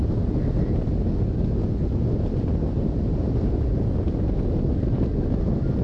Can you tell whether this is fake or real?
real